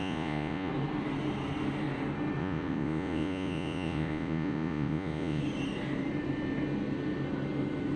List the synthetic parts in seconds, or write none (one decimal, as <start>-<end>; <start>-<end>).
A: 0.0-0.7; 2.4-5.4